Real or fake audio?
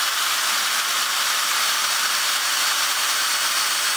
real